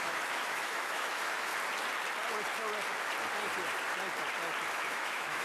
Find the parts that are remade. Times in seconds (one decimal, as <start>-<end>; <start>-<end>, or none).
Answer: 0.0-1.5; 4.7-5.4